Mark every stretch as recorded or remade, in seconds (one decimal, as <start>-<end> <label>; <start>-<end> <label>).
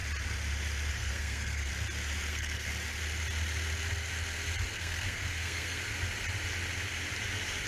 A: 0.0-0.9 recorded; 0.9-1.7 remade; 1.7-2.3 recorded; 2.3-2.7 remade; 2.7-4.7 recorded; 4.7-5.8 remade; 5.8-7.7 recorded